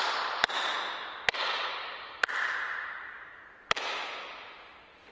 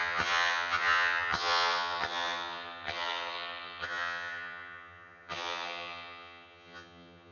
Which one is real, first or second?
first